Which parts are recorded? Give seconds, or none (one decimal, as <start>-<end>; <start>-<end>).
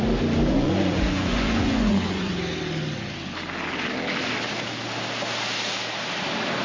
0.0-0.5; 2.3-6.6